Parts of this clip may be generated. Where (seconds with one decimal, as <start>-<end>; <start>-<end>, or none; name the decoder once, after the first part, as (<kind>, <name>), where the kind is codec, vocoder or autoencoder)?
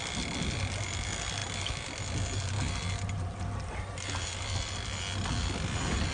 none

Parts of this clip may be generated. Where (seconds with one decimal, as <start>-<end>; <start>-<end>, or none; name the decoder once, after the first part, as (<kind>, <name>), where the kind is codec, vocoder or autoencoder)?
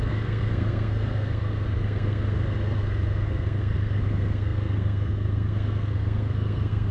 0.0-6.9 (codec, SNAC)